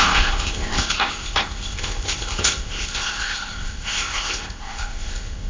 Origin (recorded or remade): remade